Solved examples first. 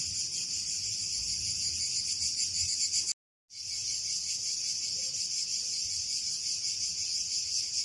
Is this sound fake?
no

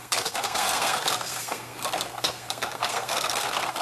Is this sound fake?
yes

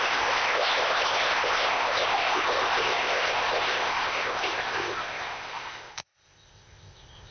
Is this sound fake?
yes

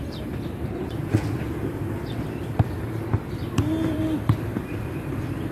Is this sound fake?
yes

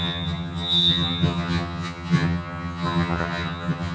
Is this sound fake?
yes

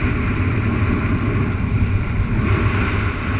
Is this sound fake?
no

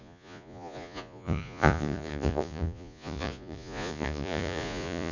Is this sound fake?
yes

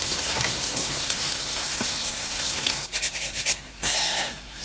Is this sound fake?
yes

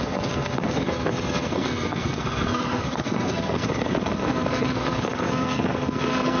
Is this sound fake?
yes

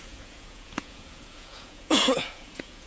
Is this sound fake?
yes